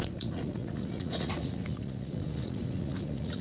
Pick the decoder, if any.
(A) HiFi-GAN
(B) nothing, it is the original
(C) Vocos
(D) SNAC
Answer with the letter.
C